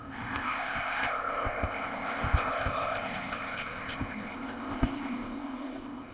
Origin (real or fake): fake